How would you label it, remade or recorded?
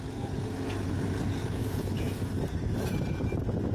recorded